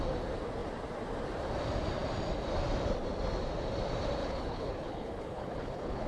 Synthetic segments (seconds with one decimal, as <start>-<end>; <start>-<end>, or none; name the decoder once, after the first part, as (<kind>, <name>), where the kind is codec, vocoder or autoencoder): 4.2-6.1 (codec, HILCodec)